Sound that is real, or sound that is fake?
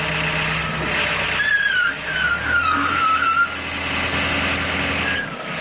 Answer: real